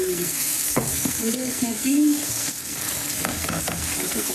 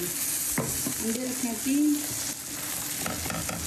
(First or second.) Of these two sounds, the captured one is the second